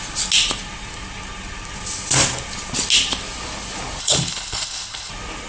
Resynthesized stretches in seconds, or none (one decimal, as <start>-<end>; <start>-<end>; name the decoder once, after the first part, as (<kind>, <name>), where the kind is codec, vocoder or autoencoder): 4.0-5.1 (codec, HILCodec)